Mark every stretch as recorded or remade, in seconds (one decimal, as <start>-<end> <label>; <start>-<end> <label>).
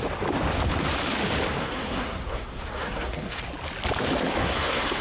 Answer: 0.0-1.6 recorded; 1.6-3.4 remade; 3.4-4.4 recorded; 4.4-5.0 remade